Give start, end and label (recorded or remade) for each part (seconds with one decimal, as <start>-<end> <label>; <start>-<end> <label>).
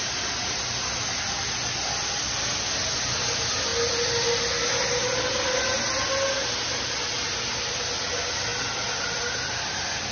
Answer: 0.0-10.1 recorded